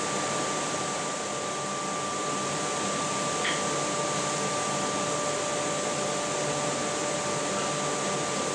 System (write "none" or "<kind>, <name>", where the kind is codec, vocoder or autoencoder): none